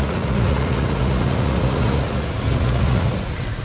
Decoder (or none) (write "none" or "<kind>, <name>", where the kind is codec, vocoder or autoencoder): vocoder, Vocos